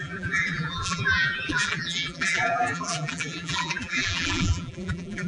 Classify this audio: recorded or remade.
remade